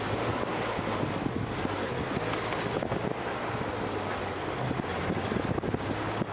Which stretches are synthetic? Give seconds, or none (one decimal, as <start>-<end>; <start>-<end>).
none